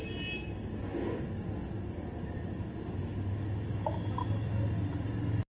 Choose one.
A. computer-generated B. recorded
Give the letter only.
B